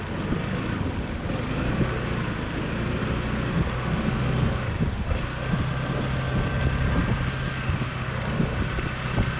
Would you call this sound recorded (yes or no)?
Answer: yes